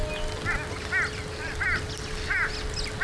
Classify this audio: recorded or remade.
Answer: recorded